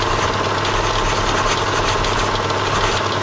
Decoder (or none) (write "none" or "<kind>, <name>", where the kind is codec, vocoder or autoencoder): none